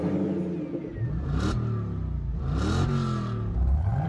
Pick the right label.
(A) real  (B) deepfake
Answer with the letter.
A